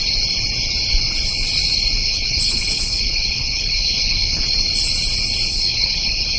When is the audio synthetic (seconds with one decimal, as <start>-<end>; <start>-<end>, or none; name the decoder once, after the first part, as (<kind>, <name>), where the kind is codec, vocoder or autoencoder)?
2.0-4.4 (codec, HILCodec); 5.5-6.4